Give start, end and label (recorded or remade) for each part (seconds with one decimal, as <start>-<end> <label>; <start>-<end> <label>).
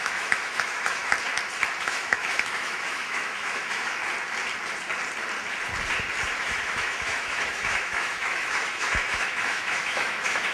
0.0-1.0 remade; 1.0-1.8 recorded; 1.8-4.0 remade; 4.0-6.4 recorded; 6.4-10.5 remade